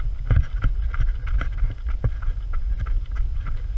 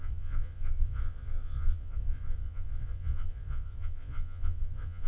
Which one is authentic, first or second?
first